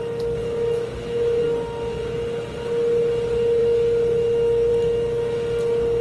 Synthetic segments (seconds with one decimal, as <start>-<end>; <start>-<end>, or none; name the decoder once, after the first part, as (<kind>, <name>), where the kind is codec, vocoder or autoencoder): 0.4-1.4 (autoencoder, DAC-VAE)